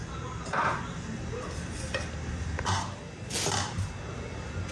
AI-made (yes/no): no